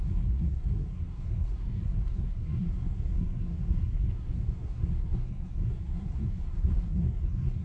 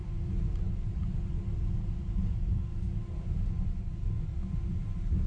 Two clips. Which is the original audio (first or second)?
second